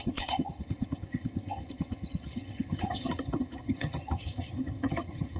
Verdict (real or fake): fake